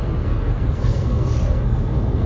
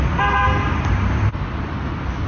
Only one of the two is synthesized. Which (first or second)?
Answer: first